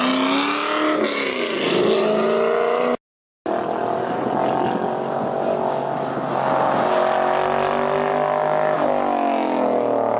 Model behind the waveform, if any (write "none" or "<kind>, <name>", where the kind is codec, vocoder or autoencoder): none